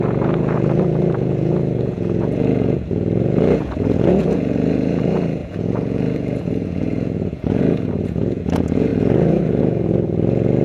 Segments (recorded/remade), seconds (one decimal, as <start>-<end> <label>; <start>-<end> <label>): 0.0-10.6 remade